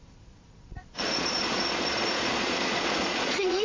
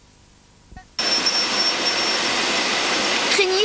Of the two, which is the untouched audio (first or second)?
second